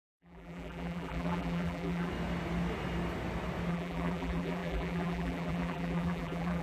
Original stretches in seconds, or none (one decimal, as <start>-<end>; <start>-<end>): 2.1-3.7